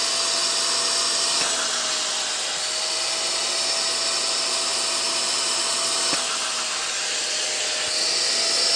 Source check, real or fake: real